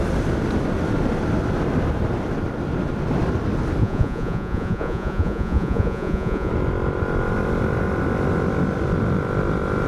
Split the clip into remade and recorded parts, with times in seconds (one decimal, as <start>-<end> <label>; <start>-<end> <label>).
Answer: 0.0-3.8 recorded; 3.8-6.5 remade; 6.5-9.9 recorded